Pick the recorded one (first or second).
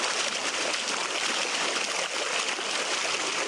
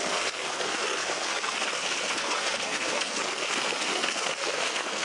first